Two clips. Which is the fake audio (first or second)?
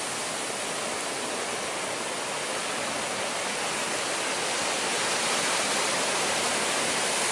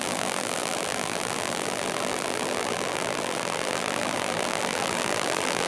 second